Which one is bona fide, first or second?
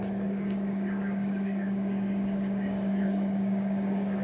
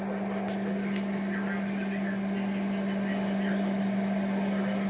second